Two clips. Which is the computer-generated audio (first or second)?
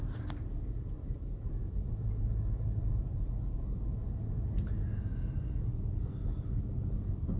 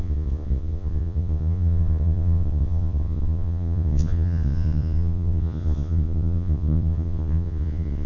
second